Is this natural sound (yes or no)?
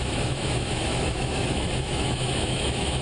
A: no